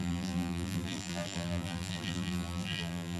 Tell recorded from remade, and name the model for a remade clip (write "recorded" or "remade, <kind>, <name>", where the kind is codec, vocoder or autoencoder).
remade, vocoder, BigVGAN v2